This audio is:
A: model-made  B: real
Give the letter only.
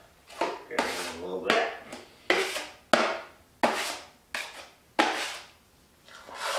B